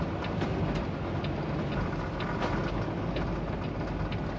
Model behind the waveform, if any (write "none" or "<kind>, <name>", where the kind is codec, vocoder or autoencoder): none